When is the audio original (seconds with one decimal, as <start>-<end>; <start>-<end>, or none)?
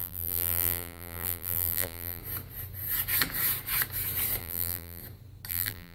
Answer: 2.2-4.4; 5.0-5.5